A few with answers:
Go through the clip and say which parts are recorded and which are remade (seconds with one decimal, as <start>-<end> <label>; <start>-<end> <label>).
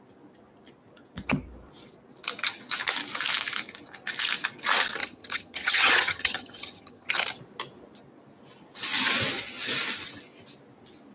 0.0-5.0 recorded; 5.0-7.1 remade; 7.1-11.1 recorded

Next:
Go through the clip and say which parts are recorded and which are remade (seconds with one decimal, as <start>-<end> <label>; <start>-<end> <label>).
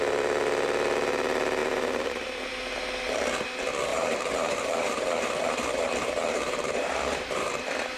0.0-1.6 recorded; 1.6-2.5 remade; 2.5-3.9 recorded; 3.9-7.5 remade; 7.5-8.0 recorded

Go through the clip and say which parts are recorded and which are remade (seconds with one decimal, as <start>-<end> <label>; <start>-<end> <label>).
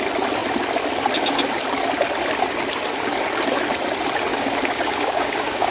0.0-4.3 recorded; 4.3-5.7 remade